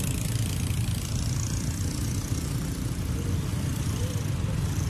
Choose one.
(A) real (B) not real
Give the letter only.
A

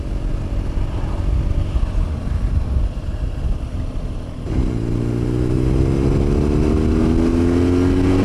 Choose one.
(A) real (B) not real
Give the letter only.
A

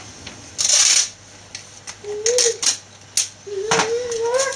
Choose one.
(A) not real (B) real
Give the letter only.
B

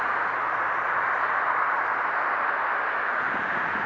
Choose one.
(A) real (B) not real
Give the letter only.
A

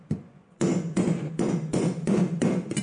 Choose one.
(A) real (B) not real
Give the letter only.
B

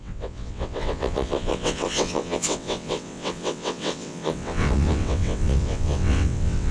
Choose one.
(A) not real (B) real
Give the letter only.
A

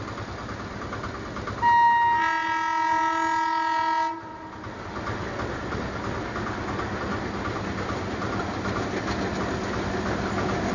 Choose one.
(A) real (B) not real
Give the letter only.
A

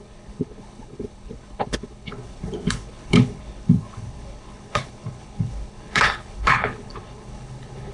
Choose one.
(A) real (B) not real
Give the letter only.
B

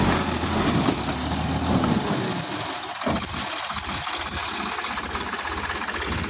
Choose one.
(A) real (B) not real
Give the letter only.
A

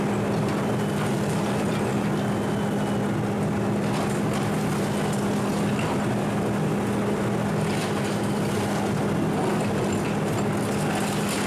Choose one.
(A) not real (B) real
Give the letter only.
B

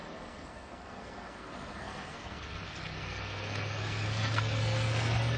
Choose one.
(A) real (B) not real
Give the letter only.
B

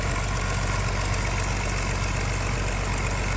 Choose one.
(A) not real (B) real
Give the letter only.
B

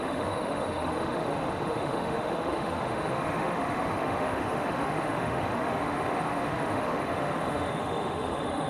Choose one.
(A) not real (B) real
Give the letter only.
A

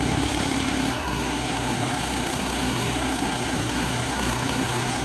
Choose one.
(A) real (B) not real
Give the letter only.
B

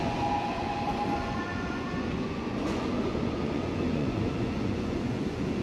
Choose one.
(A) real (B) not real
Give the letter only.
B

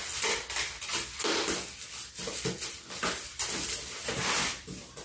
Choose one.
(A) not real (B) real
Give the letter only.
B